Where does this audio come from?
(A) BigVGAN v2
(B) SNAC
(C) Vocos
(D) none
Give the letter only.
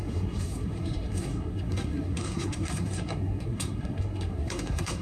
B